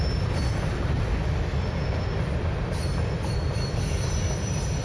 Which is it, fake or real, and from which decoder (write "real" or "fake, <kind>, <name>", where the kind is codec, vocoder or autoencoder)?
real